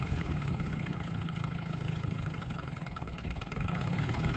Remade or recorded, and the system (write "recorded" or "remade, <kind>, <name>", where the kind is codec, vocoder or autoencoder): remade, codec, HILCodec